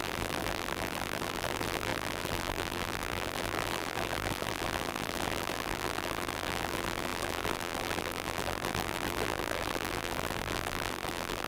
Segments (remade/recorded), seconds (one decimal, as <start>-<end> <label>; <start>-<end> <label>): 0.0-11.5 remade